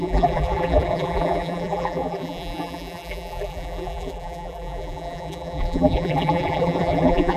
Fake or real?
fake